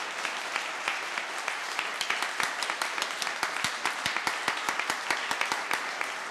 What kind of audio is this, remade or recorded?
recorded